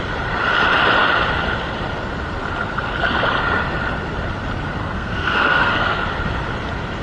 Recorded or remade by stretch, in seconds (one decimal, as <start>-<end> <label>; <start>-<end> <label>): 0.0-4.8 recorded; 4.8-6.0 remade; 6.0-7.0 recorded